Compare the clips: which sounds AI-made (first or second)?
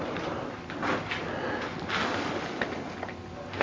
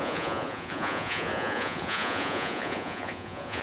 second